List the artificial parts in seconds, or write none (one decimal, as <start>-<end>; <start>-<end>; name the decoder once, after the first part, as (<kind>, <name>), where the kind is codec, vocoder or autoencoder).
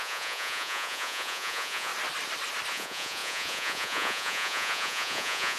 0.0-1.9 (vocoder, Vocos); 2.7-5.6